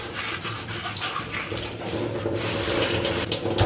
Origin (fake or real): real